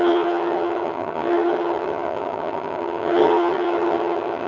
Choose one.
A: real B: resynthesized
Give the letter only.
B